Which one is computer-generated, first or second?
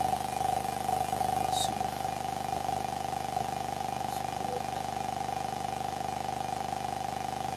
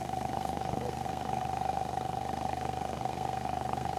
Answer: second